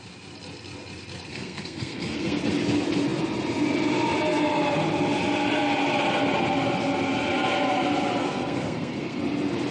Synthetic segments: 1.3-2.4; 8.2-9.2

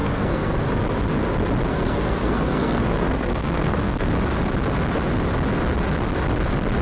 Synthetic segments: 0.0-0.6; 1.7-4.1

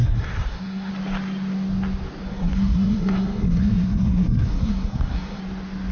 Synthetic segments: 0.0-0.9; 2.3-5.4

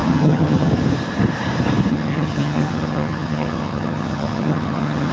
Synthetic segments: 0.0-0.7; 1.9-5.1

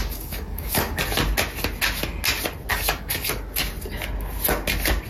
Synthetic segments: 0.0-1.0; 2.7-3.3

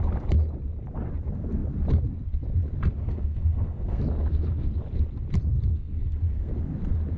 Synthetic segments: 3.0-4.0; 5.7-6.5